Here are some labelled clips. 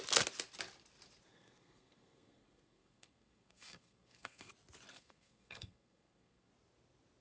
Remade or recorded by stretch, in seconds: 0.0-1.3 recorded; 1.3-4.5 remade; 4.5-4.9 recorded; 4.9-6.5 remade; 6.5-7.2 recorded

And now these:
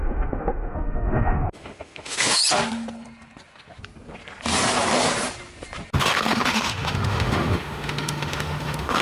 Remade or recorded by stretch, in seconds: 0.0-2.4 remade; 2.4-6.0 recorded; 6.0-9.0 remade

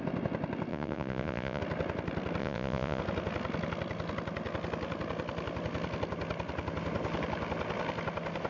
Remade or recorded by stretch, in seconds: 0.0-0.7 recorded; 0.7-1.6 remade; 1.6-2.4 recorded; 2.4-3.0 remade; 3.0-8.5 recorded

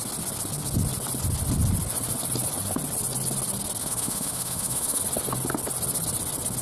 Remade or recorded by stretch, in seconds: 0.0-3.8 recorded; 3.8-5.0 remade; 5.0-6.6 recorded

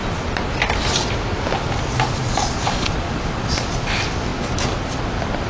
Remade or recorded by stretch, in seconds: 0.0-2.2 recorded; 2.2-3.6 remade; 3.6-5.5 recorded